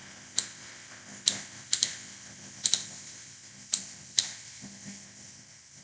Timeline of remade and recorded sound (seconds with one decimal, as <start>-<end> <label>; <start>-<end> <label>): 0.0-5.8 recorded